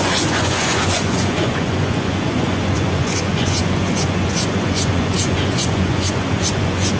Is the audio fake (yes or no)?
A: yes